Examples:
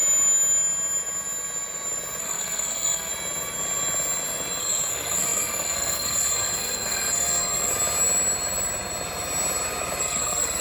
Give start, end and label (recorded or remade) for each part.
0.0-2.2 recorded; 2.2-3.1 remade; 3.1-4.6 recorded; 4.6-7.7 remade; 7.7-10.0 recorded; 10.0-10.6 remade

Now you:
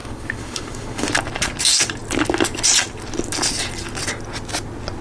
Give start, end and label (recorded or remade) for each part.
0.0-1.1 remade; 1.1-5.0 recorded

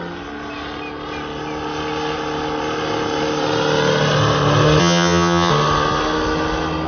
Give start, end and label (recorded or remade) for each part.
0.0-4.8 recorded; 4.8-5.5 remade; 5.5-6.9 recorded

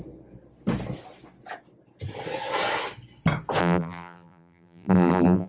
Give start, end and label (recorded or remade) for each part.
0.0-3.6 recorded; 3.6-5.5 remade